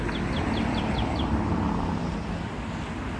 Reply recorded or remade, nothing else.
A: recorded